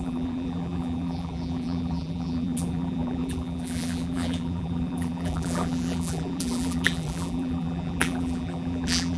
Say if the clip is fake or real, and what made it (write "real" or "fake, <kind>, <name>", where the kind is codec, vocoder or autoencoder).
fake, vocoder, BigVGAN v2